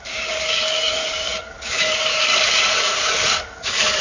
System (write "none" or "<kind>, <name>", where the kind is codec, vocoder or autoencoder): codec, DAC